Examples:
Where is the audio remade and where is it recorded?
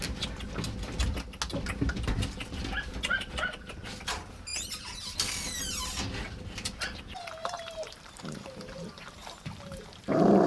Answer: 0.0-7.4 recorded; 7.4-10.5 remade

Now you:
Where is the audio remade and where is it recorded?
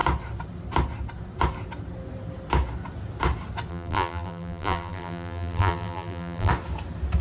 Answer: 0.0-3.7 recorded; 3.7-6.5 remade; 6.5-7.2 recorded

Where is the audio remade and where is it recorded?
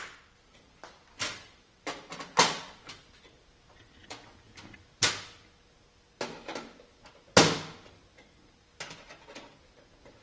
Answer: 0.0-4.0 recorded; 4.0-4.6 remade; 4.6-10.2 recorded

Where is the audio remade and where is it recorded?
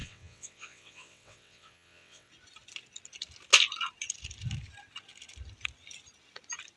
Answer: 0.0-2.3 remade; 2.3-6.8 recorded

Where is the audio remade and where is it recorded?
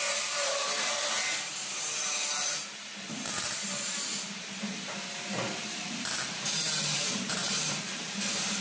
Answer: 0.0-2.9 remade; 2.9-5.6 recorded; 5.6-8.6 remade